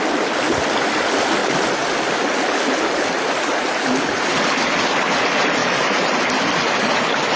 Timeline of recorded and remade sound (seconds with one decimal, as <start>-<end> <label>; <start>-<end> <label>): 0.0-7.4 recorded